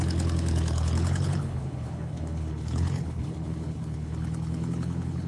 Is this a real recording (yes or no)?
no